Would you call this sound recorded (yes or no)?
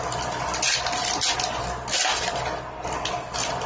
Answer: yes